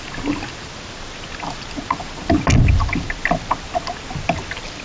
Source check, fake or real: real